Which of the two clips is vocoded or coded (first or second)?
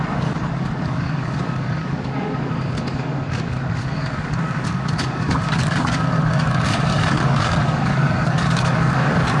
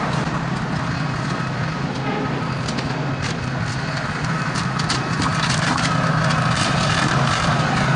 first